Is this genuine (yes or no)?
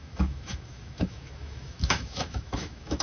no